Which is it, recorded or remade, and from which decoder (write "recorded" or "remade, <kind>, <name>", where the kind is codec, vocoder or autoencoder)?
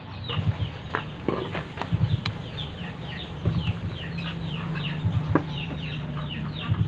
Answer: recorded